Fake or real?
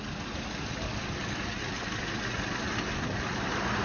real